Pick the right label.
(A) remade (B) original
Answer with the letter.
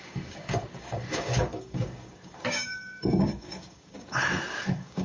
A